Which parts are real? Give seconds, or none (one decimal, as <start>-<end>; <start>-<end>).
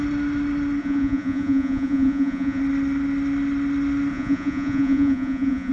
0.0-0.8; 2.6-4.1